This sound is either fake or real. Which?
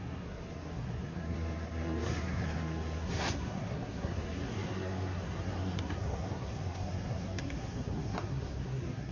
fake